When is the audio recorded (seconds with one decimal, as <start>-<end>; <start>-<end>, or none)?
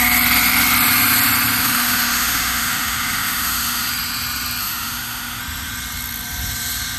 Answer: 0.0-1.6; 3.9-4.6; 5.4-7.0